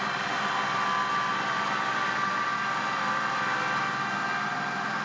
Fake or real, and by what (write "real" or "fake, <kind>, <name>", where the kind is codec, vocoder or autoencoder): real